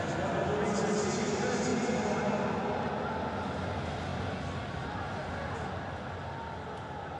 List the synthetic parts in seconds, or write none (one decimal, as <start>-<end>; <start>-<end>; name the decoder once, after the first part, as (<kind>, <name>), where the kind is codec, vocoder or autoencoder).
none